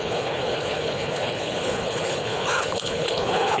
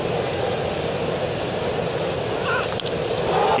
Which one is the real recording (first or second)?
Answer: second